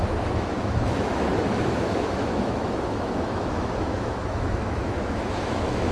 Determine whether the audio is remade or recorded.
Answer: remade